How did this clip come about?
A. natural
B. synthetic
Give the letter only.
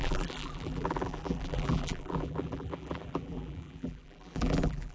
B